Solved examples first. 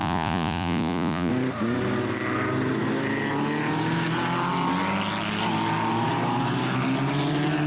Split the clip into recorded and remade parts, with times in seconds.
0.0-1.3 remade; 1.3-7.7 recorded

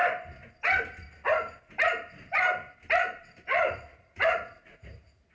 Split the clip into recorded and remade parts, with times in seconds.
0.0-3.9 recorded; 3.9-5.3 remade